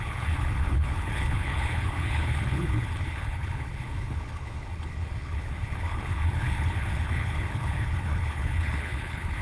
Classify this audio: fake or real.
fake